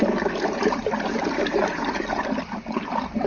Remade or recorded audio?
recorded